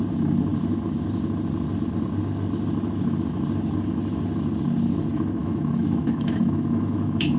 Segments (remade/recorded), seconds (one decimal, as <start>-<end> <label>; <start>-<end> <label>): 0.0-5.4 recorded; 5.4-7.4 remade